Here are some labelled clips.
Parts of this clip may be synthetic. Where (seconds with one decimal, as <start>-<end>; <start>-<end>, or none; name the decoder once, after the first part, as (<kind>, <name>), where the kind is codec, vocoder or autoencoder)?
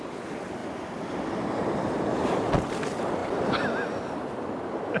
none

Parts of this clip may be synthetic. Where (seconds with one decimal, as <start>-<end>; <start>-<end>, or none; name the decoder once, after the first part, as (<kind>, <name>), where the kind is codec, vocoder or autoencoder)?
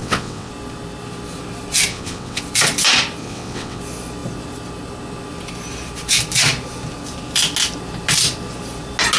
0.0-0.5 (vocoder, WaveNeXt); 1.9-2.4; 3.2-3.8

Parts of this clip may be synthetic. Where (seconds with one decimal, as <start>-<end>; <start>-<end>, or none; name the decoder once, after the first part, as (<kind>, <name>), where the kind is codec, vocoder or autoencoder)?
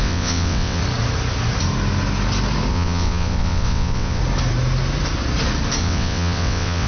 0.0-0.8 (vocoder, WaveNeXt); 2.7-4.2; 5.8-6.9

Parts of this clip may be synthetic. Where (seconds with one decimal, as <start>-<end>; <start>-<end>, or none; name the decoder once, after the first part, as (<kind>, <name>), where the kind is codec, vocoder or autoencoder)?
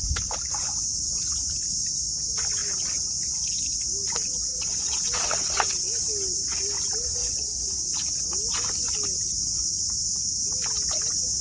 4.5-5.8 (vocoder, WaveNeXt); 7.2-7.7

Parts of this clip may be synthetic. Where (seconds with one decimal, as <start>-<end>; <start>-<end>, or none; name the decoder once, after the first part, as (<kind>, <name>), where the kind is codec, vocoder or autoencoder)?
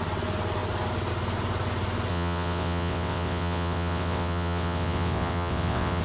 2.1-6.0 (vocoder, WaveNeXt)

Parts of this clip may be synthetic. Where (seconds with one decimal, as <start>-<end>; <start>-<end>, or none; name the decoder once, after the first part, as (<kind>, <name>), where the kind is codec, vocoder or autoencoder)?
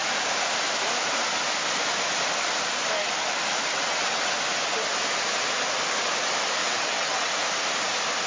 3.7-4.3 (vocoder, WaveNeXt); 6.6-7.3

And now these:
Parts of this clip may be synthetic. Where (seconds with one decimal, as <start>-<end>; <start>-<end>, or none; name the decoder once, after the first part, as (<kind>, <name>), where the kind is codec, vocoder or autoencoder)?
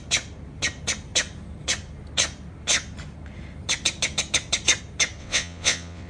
5.2-6.1 (vocoder, WaveNeXt)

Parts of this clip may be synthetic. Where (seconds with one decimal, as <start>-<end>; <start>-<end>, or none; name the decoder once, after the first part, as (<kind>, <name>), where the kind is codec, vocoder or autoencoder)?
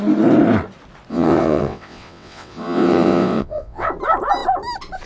1.1-3.9 (vocoder, WaveNeXt)